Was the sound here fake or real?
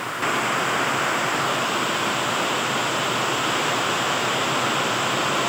real